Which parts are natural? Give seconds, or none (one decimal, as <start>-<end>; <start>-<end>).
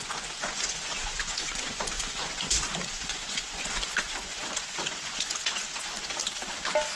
6.2-7.0